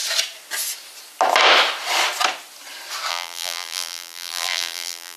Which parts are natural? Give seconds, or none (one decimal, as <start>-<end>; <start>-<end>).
0.0-3.1